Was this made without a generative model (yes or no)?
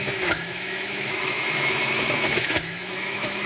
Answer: no